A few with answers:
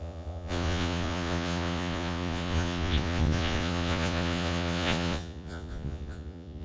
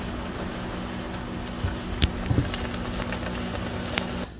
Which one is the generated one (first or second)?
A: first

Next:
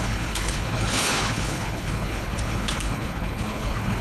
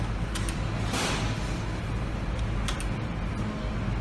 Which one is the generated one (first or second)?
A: first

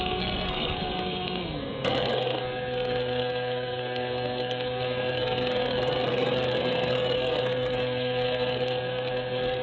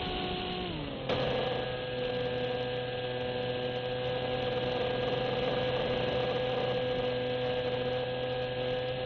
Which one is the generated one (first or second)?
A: first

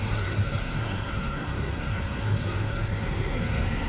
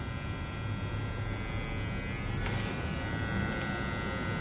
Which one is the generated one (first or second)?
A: first